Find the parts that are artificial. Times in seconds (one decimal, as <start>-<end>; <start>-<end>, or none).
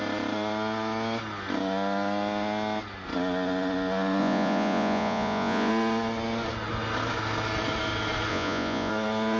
4.2-5.7; 8.3-8.9